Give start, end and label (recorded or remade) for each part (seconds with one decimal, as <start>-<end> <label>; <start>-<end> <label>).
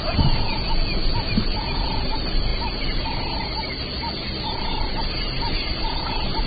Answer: 0.0-6.5 recorded